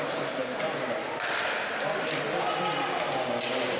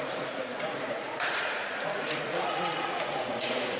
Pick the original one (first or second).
first